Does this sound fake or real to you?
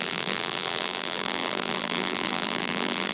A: fake